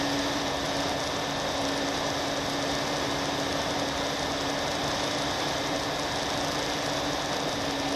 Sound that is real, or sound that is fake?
real